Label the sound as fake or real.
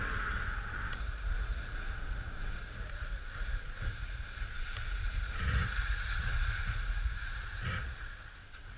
fake